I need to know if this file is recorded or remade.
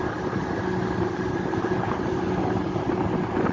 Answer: recorded